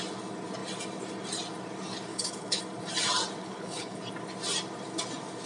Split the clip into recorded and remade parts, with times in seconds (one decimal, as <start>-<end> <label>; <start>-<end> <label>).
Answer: 0.0-2.1 recorded; 2.1-2.6 remade; 2.6-3.4 recorded; 3.4-4.0 remade; 4.0-5.5 recorded